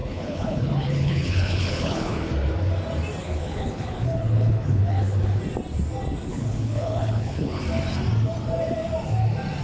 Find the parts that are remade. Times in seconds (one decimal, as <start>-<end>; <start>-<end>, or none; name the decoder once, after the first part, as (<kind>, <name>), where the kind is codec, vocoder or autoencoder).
0.0-2.3 (codec, HILCodec); 3.2-5.4; 6.3-7.6